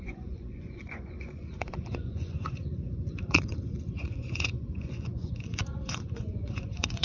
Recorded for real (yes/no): no